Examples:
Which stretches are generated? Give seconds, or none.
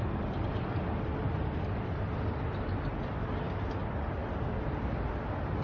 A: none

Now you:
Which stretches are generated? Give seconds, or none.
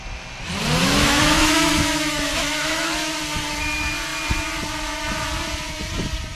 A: 0.8-3.2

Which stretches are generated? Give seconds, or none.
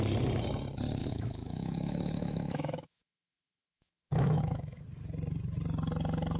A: 1.0-4.8